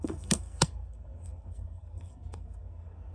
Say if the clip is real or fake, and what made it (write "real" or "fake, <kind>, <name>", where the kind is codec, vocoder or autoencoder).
fake, codec, SNAC